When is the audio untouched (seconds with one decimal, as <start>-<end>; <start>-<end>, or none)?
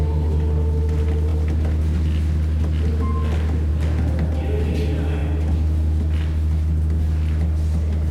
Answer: 0.0-8.1